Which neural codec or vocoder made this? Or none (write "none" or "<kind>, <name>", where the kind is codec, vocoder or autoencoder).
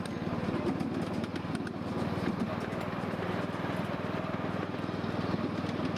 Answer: none